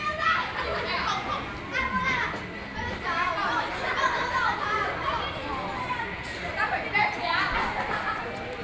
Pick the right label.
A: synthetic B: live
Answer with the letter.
B